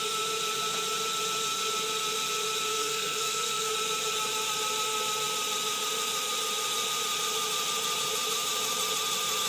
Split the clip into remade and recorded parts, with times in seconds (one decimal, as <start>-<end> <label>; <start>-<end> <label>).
0.0-2.7 recorded; 2.7-3.7 remade; 3.7-9.5 recorded